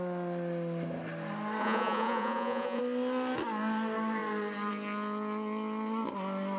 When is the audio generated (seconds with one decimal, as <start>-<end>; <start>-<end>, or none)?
1.6-2.8

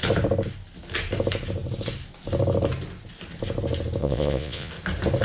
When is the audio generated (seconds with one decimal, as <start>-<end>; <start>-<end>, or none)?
4.0-4.7